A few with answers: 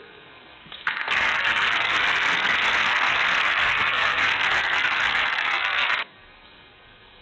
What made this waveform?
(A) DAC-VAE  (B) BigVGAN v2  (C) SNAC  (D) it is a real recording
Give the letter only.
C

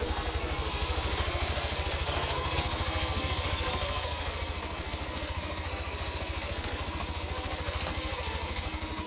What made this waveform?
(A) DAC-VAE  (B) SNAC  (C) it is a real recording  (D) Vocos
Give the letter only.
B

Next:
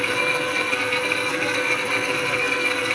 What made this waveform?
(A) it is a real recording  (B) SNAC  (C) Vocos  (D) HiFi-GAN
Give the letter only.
B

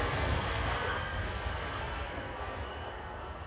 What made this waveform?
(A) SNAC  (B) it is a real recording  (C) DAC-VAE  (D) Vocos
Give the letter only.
A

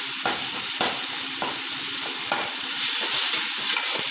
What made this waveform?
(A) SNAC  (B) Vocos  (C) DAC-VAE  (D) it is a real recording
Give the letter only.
D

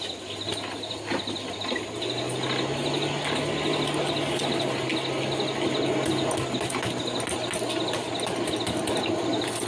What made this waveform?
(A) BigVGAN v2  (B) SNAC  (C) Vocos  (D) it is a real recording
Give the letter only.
D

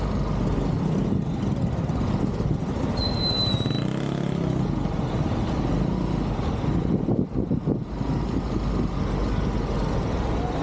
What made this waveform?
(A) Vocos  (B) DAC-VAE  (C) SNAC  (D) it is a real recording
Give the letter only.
D